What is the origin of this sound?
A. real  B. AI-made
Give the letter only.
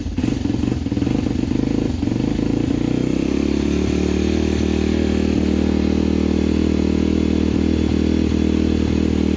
A